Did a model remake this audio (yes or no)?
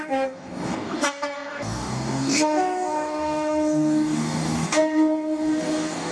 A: yes